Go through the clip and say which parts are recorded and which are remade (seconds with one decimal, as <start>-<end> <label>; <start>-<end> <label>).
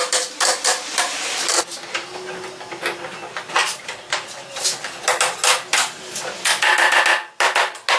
0.0-1.7 remade; 1.7-3.6 recorded; 3.6-4.9 remade; 4.9-8.0 recorded